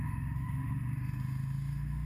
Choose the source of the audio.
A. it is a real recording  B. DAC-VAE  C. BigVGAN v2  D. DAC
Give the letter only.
B